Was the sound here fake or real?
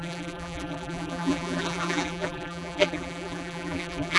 fake